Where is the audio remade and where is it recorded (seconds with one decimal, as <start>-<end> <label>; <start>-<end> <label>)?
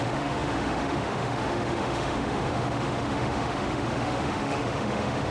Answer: 0.0-5.3 remade